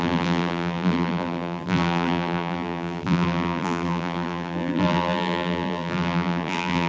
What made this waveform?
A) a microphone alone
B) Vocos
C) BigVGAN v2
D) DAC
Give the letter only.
C